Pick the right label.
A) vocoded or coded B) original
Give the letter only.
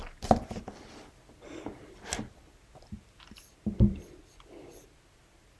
B